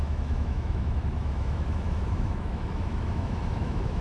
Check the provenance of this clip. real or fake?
fake